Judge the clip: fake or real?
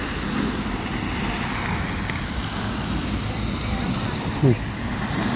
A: real